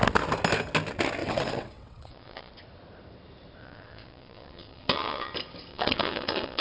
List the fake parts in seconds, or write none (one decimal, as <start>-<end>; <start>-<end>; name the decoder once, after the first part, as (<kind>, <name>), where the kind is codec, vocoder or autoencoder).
1.2-2.5 (vocoder, WaveNeXt); 3.6-5.3; 5.7-6.6